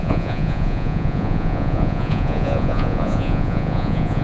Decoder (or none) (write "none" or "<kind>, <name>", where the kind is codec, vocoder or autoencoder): vocoder, Vocos